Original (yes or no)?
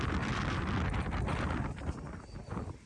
yes